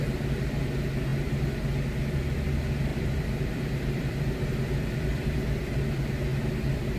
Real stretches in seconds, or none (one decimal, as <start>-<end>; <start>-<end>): 0.0-2.9; 5.6-7.0